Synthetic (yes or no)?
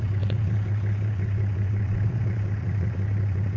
yes